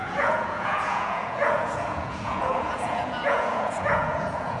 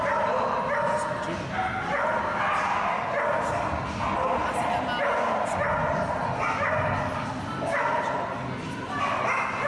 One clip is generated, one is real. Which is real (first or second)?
second